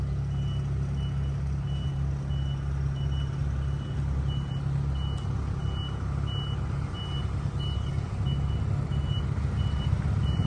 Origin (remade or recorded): recorded